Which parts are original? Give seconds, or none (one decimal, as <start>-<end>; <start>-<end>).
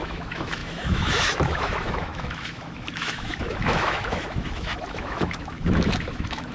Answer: none